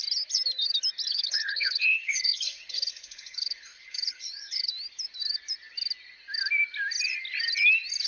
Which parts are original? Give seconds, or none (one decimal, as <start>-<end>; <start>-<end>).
0.0-1.1; 4.7-8.1

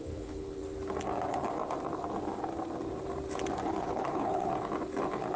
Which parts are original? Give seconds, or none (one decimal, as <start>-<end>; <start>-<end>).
0.6-3.8; 4.5-5.4

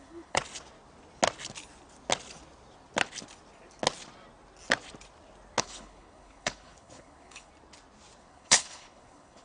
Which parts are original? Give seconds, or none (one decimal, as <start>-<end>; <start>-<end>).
0.4-5.6; 7.5-8.2

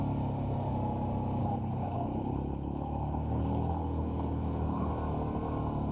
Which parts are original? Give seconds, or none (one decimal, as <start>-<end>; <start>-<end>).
0.0-1.4; 4.9-5.9

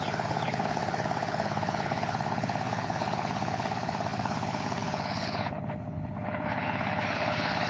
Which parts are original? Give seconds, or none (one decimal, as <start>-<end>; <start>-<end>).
none

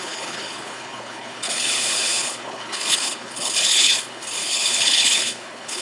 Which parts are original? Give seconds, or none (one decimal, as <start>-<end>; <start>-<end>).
none

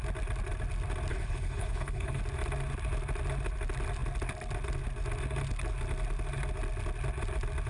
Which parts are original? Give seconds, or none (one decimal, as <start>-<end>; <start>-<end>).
0.0-1.1; 2.2-7.7